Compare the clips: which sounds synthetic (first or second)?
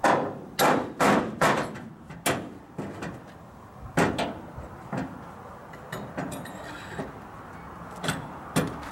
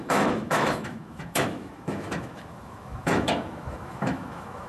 second